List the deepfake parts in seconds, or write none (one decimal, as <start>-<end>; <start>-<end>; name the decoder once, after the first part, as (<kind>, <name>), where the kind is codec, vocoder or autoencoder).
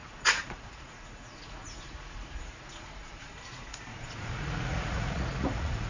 0.0-5.9 (vocoder, Vocos)